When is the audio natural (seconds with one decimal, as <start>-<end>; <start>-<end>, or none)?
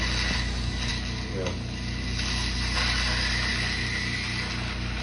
0.0-5.0